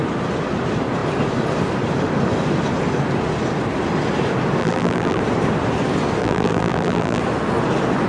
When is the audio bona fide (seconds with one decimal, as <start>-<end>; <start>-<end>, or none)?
0.0-4.6; 5.2-6.2; 7.2-8.1